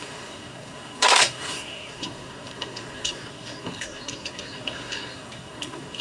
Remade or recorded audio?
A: remade